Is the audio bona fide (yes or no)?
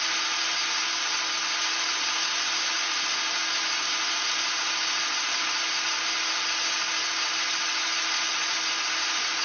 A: yes